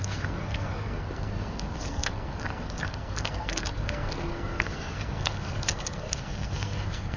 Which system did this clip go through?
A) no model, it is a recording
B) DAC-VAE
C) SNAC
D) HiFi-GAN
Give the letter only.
C